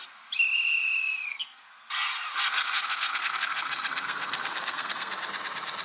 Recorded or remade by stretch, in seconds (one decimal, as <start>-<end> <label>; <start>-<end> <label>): 0.0-1.3 recorded; 1.3-1.9 remade; 1.9-2.5 recorded; 2.5-5.1 remade; 5.1-5.8 recorded